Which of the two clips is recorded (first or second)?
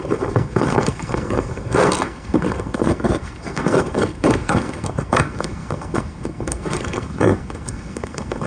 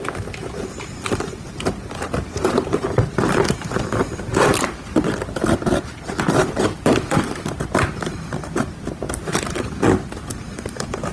second